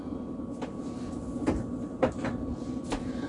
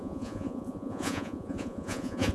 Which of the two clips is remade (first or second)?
second